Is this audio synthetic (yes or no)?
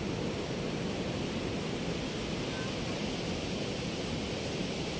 no